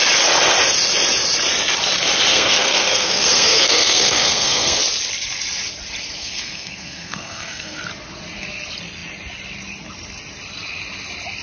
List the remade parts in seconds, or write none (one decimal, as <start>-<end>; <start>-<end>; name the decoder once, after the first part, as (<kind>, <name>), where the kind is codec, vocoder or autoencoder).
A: 2.3-4.8 (codec, SNAC); 6.2-7.8